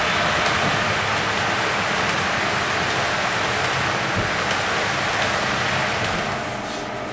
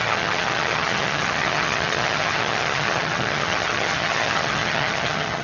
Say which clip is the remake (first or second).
second